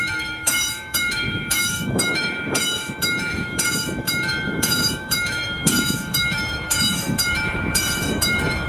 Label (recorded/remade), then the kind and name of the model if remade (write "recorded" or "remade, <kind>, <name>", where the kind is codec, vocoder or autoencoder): remade, autoencoder, DAC-VAE